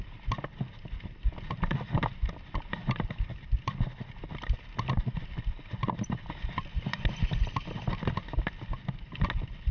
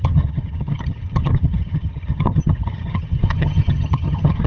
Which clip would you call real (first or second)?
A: first